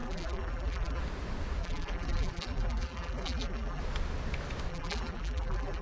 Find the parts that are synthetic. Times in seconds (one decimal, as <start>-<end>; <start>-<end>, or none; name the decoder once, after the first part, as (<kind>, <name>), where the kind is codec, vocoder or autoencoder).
0.0-1.0 (vocoder, BigVGAN v2); 1.6-3.8; 4.7-5.8